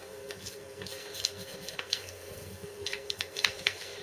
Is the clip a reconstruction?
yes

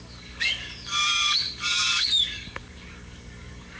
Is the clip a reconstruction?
yes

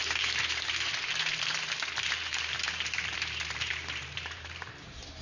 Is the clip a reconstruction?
yes